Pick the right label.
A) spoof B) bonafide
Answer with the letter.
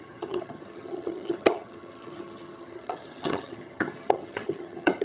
A